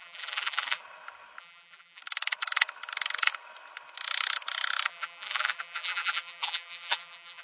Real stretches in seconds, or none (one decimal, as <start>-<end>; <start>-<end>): 0.8-1.4; 2.0-4.9